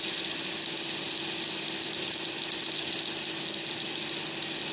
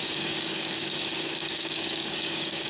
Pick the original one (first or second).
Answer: first